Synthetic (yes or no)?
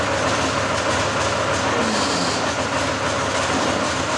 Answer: no